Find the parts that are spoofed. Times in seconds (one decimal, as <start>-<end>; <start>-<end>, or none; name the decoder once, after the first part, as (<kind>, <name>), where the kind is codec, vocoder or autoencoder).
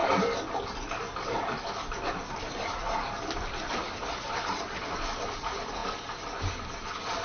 none